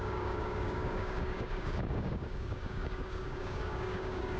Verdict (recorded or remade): remade